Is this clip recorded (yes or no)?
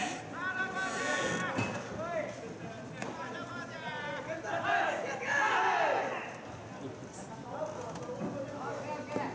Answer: yes